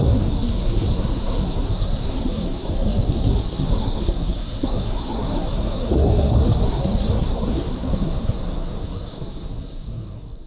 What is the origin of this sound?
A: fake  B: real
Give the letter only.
A